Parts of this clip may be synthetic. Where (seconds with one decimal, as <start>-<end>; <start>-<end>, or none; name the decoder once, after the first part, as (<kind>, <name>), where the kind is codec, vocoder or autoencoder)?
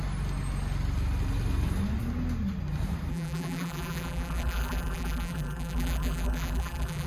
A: 3.1-7.1 (vocoder, BigVGAN v2)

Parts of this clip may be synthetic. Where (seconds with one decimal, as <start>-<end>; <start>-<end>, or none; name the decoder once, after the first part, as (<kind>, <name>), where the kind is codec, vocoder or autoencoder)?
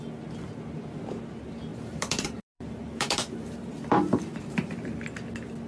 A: 1.7-4.7 (vocoder, BigVGAN v2)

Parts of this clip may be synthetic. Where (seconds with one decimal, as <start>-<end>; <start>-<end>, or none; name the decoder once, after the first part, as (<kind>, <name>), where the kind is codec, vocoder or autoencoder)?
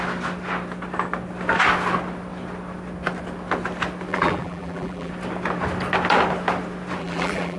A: 4.1-5.1 (vocoder, BigVGAN v2); 7.0-7.6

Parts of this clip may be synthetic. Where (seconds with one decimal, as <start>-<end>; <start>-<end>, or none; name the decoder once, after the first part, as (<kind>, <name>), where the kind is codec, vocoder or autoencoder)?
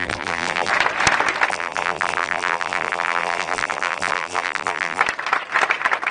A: 0.0-0.7 (vocoder, BigVGAN v2); 1.5-5.0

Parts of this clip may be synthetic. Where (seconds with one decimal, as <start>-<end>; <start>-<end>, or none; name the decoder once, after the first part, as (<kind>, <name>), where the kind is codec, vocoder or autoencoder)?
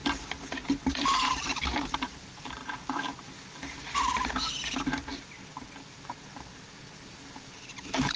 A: 0.9-2.6 (vocoder, BigVGAN v2); 5.8-8.2